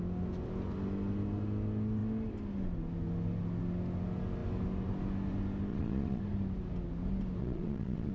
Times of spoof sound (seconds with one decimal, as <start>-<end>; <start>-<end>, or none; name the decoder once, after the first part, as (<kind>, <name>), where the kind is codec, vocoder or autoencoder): 5.7-6.2 (vocoder, Vocos); 7.4-8.1